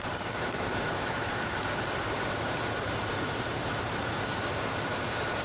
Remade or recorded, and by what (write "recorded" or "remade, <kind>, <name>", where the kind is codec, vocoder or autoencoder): remade, vocoder, BigVGAN v2